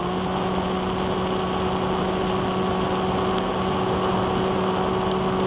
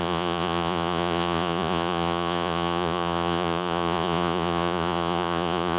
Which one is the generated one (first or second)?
second